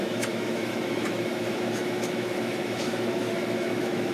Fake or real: fake